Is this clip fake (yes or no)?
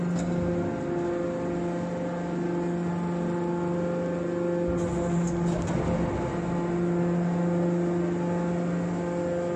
no